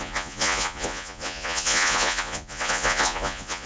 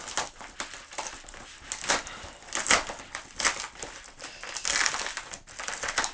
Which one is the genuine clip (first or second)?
second